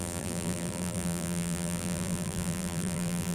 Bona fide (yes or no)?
no